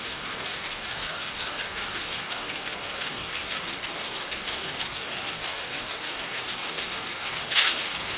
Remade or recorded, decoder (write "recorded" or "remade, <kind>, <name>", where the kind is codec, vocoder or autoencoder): remade, codec, DAC